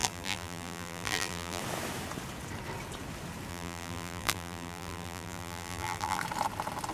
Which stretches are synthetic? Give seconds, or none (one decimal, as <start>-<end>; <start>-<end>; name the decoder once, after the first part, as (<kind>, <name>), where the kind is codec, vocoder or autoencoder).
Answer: 0.0-1.6 (vocoder, BigVGAN v2); 3.5-6.2